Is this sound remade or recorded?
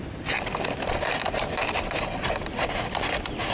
recorded